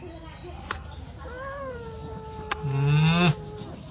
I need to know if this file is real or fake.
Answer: real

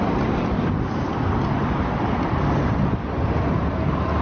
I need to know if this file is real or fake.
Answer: real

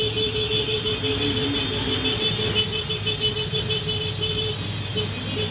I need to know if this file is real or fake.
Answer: real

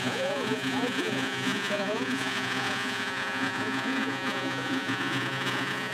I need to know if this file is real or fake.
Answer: fake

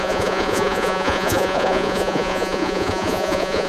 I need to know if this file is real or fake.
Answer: fake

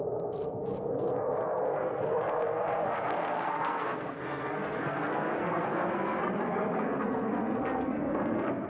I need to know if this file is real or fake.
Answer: fake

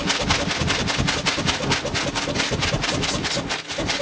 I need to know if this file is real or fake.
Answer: real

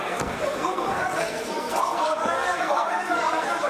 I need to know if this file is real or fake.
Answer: fake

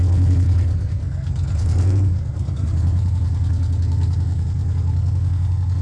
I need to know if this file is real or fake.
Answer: fake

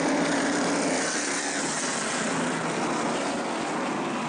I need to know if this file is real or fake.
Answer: real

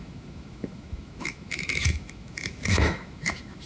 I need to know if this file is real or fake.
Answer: fake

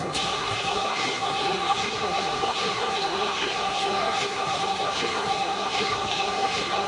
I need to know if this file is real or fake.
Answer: fake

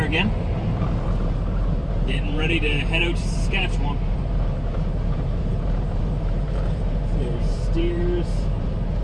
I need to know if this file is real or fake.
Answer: fake